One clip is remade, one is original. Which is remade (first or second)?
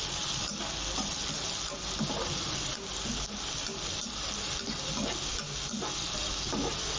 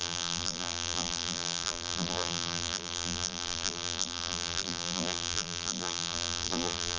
second